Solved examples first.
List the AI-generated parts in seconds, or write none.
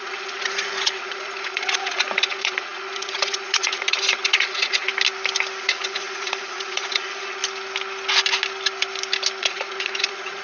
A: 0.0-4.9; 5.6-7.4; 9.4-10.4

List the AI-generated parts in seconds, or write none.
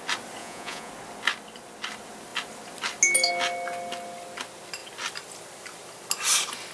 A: 0.4-0.9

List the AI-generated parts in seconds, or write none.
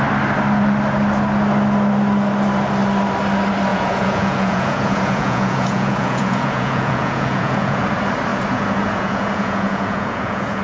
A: 3.7-7.8; 8.3-10.6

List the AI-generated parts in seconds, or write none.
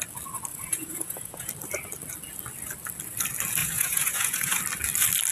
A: 0.5-1.5; 3.6-4.6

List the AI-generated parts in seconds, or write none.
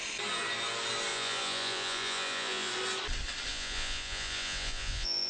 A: 1.1-2.7; 3.5-5.3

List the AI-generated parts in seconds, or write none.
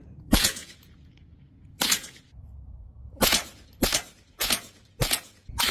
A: 0.0-3.4; 4.3-5.7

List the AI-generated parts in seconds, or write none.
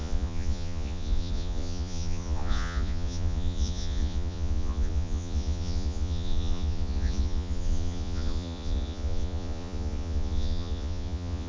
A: 0.0-11.5